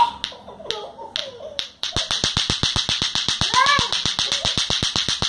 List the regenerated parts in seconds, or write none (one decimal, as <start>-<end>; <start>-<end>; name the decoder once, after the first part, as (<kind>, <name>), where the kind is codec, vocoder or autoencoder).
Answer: 1.2-1.9 (vocoder, BigVGAN v2)